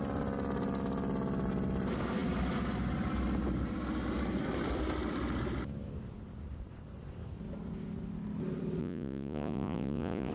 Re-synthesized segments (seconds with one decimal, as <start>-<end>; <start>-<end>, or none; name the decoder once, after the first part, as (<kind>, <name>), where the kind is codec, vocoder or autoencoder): 8.8-10.3 (vocoder, Vocos)